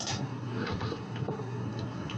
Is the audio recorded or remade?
remade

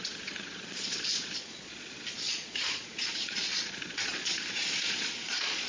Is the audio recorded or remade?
remade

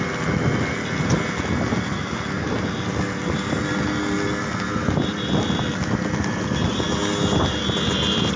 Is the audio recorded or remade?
recorded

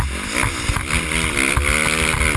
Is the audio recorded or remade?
recorded